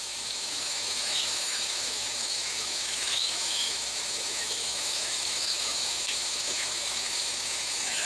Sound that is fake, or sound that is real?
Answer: fake